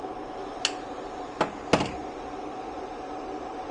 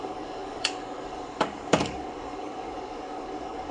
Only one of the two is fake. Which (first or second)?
second